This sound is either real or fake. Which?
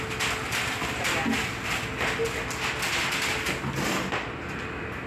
real